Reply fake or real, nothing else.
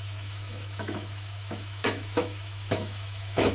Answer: fake